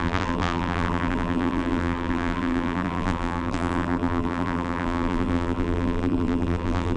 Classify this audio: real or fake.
fake